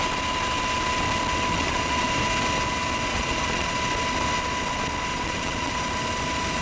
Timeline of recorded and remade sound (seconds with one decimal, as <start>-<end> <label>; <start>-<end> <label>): 0.0-1.5 recorded; 1.5-2.1 remade; 2.1-3.1 recorded; 3.1-3.7 remade; 3.7-5.1 recorded; 5.1-5.8 remade; 5.8-6.6 recorded